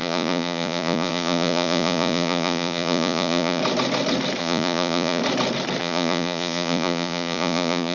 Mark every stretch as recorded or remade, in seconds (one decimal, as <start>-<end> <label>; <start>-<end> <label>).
0.0-3.6 remade; 3.6-4.4 recorded; 4.4-5.2 remade; 5.2-5.8 recorded; 5.8-7.9 remade